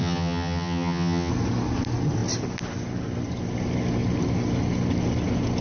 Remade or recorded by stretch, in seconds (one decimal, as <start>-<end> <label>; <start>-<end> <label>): 0.0-1.3 remade; 1.3-5.6 recorded